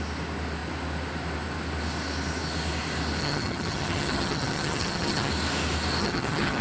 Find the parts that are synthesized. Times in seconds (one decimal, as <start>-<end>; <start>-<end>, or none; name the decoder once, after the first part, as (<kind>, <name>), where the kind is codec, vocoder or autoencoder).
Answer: 3.2-5.3 (vocoder, HiFi-GAN); 6.0-6.6